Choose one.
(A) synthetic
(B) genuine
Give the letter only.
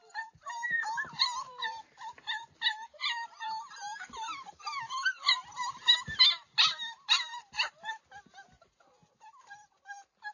B